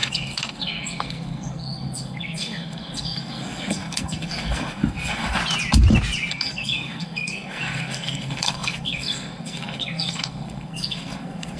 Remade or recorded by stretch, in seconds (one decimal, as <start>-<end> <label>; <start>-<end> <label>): 0.0-5.4 remade; 5.4-6.3 recorded; 6.3-11.6 remade